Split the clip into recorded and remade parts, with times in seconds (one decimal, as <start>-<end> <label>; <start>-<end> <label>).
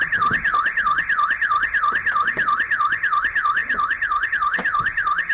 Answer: 0.0-5.3 recorded